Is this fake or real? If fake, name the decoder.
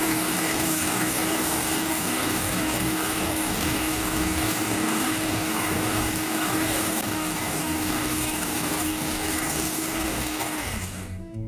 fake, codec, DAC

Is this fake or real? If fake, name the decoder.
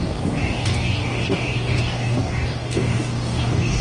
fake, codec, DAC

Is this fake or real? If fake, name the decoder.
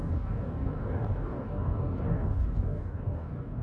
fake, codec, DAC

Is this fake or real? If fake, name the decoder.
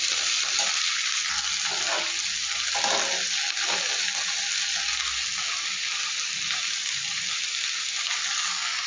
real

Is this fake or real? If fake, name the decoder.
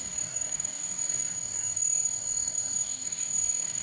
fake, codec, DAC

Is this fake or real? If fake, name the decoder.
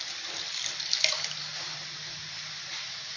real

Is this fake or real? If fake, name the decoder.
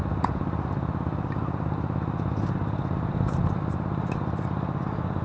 real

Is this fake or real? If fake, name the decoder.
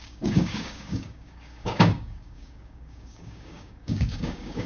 fake, codec, DAC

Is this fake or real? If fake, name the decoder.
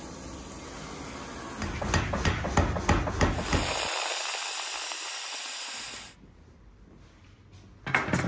real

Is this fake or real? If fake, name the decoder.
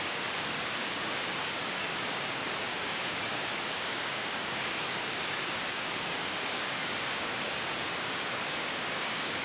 fake, codec, DAC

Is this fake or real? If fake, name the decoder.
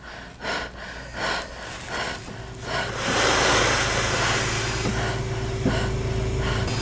real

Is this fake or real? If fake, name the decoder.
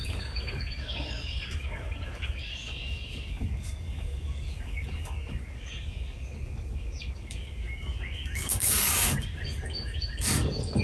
fake, codec, DAC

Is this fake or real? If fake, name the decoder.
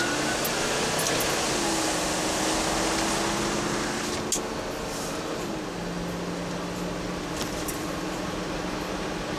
real